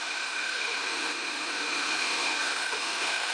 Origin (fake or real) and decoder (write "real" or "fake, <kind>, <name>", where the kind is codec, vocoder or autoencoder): fake, autoencoder, DAC-VAE